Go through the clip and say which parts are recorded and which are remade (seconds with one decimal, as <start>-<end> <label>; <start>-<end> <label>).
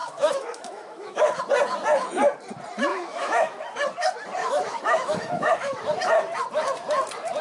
0.0-1.4 remade; 1.4-2.9 recorded; 2.9-3.6 remade; 3.6-4.4 recorded; 4.4-5.8 remade; 5.8-7.4 recorded